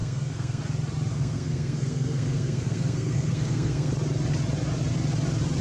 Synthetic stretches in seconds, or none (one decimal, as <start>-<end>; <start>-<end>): 0.0-0.6; 1.1-3.9